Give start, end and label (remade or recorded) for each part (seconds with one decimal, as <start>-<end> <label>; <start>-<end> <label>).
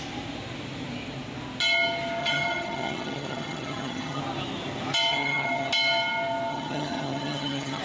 0.0-2.2 recorded; 2.2-4.2 remade; 4.2-5.1 recorded; 5.1-5.7 remade; 5.7-6.5 recorded; 6.5-7.8 remade